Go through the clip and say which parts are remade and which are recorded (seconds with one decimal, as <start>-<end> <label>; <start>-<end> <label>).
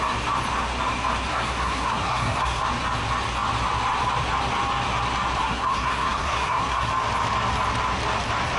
0.0-1.3 recorded; 1.3-2.6 remade; 2.6-5.4 recorded; 5.4-6.9 remade; 6.9-8.6 recorded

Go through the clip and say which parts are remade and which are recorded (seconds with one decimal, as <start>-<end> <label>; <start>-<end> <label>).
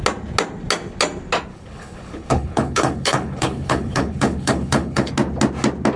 0.0-1.5 recorded; 1.5-5.1 remade; 5.1-6.0 recorded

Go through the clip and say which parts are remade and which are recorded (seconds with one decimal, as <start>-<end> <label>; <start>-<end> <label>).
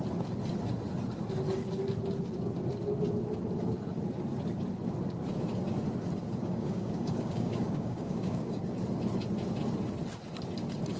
0.0-6.4 recorded; 6.4-8.6 remade; 8.6-11.0 recorded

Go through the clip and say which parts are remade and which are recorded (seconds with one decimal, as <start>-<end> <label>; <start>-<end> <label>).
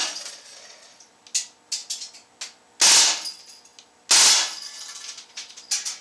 0.0-1.1 remade; 1.1-6.0 recorded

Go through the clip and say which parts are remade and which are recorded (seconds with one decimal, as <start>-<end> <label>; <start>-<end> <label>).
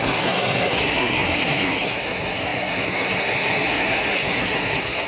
0.0-5.1 remade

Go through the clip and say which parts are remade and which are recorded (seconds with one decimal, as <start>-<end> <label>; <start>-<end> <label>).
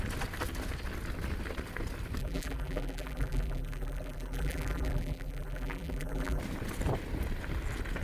0.0-2.2 recorded; 2.2-6.4 remade; 6.4-8.0 recorded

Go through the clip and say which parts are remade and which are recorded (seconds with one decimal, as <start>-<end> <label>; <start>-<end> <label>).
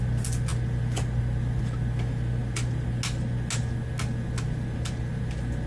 0.0-5.7 recorded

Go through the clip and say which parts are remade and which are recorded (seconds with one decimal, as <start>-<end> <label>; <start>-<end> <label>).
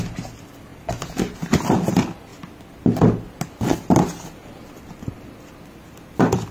0.0-6.5 recorded